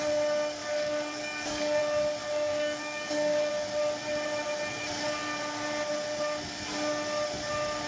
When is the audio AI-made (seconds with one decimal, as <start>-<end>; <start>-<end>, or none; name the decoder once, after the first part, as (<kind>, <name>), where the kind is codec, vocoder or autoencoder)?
0.6-1.8 (codec, DAC); 2.2-3.5